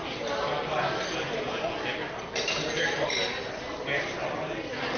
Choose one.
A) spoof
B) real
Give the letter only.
B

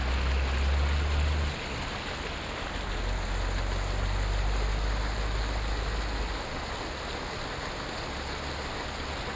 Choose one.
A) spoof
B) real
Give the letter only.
B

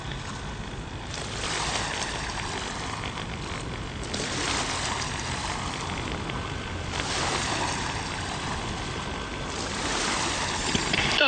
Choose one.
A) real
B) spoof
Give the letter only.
A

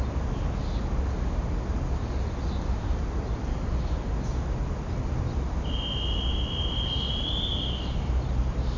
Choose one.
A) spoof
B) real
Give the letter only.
B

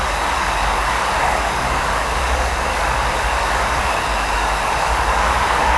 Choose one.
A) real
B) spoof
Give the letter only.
B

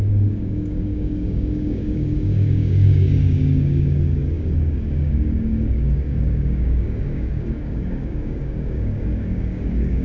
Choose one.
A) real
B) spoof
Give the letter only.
B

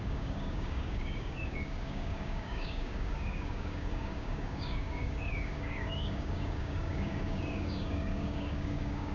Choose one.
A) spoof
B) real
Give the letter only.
A